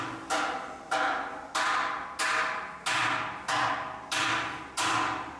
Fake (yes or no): no